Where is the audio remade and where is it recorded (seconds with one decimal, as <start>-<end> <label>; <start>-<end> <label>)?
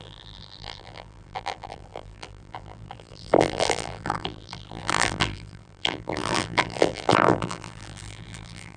0.0-8.8 remade